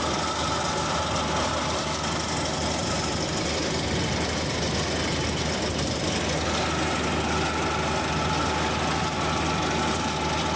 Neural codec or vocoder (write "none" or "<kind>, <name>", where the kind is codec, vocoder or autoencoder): none